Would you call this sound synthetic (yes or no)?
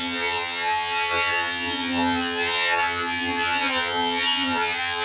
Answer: yes